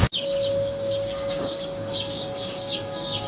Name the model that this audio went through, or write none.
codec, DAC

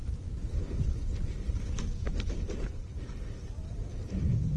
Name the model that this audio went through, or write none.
none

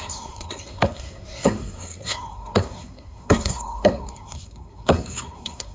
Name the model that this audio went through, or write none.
codec, SNAC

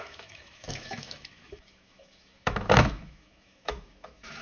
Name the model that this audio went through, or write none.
autoencoder, DAC-VAE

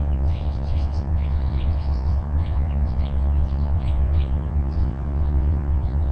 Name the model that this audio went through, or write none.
vocoder, WaveNeXt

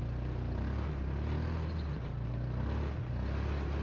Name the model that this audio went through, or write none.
none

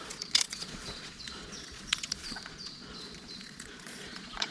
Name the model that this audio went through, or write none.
vocoder, Vocos